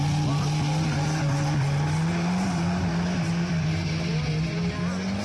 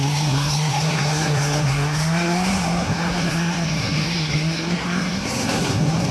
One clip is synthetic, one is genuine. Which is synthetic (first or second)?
second